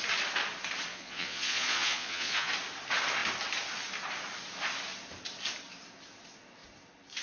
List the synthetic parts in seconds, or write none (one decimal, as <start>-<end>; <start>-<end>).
0.9-2.5